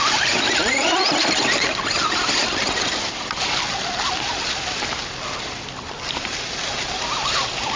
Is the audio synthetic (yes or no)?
no